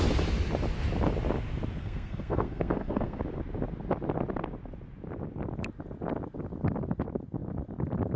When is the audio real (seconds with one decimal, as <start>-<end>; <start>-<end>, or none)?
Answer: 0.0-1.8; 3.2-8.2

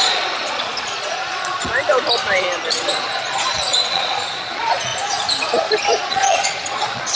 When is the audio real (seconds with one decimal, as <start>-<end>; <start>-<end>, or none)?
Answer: 1.7-2.8; 4.9-6.0

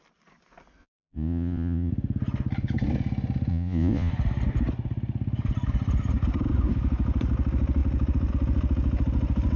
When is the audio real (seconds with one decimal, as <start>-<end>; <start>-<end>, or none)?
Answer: 0.0-0.8; 1.9-3.5; 4.1-9.6